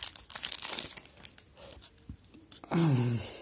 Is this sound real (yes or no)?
yes